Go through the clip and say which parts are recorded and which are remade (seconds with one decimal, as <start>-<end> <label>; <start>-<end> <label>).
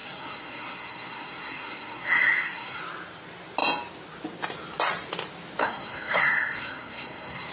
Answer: 0.0-2.8 remade; 2.8-5.6 recorded; 5.6-7.5 remade